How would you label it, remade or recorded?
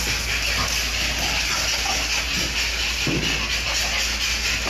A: recorded